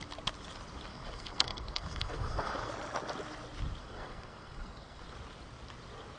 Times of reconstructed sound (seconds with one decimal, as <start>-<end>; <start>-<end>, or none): 0.9-2.7; 3.8-5.0